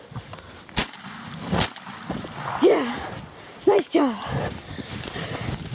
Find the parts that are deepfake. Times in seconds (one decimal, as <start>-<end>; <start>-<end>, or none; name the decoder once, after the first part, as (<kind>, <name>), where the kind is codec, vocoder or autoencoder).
none